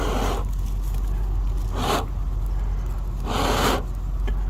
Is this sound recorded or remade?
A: recorded